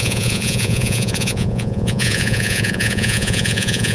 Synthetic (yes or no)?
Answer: yes